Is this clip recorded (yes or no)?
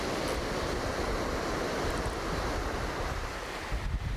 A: yes